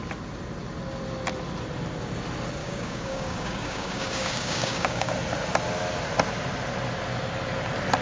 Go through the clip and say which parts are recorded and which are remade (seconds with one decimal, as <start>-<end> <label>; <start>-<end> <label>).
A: 0.0-2.6 recorded; 2.6-5.1 remade; 5.1-8.0 recorded

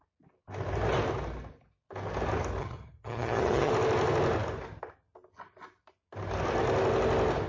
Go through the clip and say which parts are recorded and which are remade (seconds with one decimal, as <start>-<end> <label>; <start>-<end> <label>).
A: 0.0-2.6 recorded; 2.6-3.7 remade; 3.7-7.5 recorded

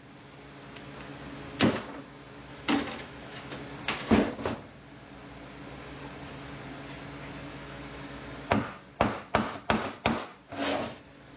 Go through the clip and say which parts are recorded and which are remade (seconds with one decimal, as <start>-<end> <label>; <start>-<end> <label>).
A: 0.0-2.5 recorded; 2.5-3.6 remade; 3.6-7.5 recorded; 7.5-8.2 remade; 8.2-11.4 recorded

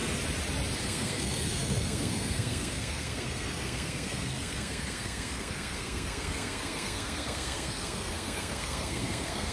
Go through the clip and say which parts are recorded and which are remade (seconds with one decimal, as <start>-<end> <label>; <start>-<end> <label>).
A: 0.0-0.8 recorded; 0.8-9.5 remade

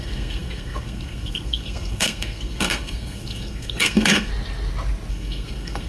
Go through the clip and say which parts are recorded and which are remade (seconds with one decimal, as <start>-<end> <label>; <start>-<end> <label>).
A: 0.0-4.3 remade; 4.3-5.1 recorded; 5.1-5.9 remade

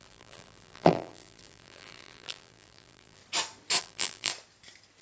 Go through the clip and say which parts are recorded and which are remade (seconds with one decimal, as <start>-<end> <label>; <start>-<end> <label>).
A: 0.0-3.2 remade; 3.2-3.8 recorded; 3.8-4.3 remade; 4.3-5.0 recorded

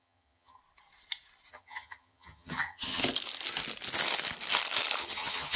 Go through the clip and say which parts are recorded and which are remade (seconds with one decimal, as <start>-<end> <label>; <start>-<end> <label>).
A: 0.0-0.6 remade; 0.6-1.5 recorded; 1.5-3.0 remade; 3.0-5.0 recorded; 5.0-5.6 remade